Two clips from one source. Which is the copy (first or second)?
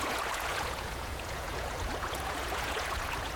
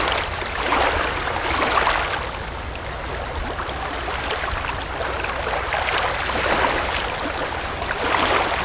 first